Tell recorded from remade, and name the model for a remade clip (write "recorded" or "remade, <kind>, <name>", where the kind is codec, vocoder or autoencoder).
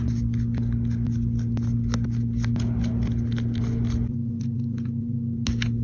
recorded